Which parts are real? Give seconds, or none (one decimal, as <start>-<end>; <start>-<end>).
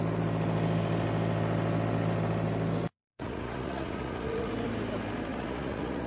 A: 0.0-2.9; 4.5-5.3